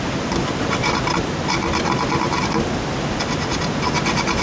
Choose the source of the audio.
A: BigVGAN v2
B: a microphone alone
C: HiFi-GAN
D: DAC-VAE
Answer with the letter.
B